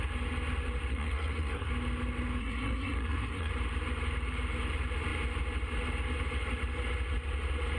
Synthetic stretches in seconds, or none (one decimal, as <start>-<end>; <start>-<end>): 0.9-1.7; 2.4-3.5